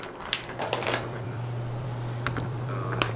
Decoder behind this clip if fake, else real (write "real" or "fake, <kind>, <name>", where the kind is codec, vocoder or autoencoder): fake, vocoder, BigVGAN v2